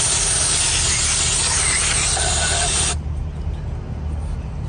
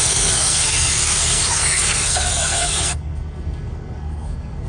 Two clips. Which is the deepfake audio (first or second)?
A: second